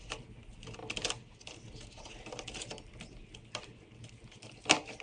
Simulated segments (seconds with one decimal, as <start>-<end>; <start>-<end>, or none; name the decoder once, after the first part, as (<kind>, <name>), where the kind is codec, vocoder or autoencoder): none